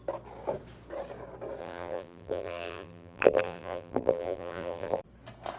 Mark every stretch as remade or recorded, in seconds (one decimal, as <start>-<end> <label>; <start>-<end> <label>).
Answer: 0.0-1.6 recorded; 1.6-5.0 remade; 5.0-5.6 recorded